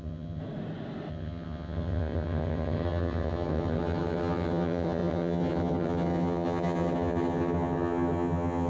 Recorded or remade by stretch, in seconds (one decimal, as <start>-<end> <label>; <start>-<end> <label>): 0.0-0.4 remade; 0.4-1.1 recorded; 1.1-8.7 remade